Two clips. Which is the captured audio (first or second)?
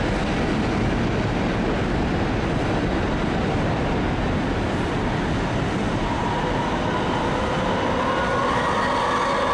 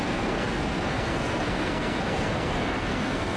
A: first